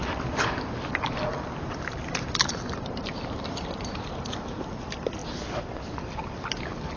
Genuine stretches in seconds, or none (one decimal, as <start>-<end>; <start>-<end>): 5.2-6.6